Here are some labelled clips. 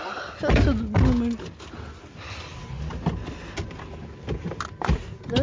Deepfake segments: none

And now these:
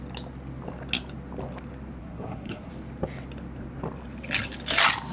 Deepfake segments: 2.0-2.7 (codec, SNAC)

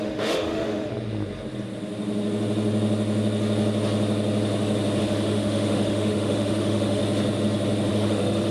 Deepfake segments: 0.0-0.9 (autoencoder, DAC-VAE); 5.0-7.0; 7.9-8.5

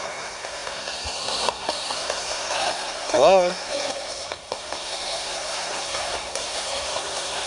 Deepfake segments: 0.0-7.5 (codec, SNAC)

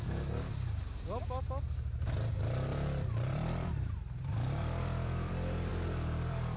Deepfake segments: 2.7-5.3 (vocoder, BigVGAN v2); 5.7-6.6